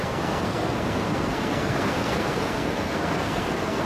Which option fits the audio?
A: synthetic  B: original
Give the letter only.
A